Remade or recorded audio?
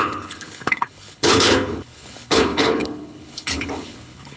remade